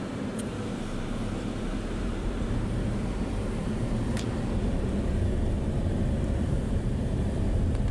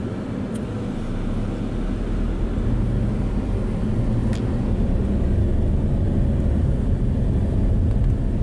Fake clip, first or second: first